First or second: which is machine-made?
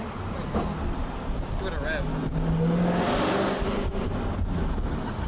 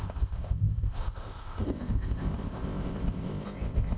second